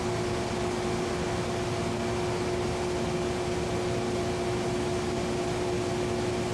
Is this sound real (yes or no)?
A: yes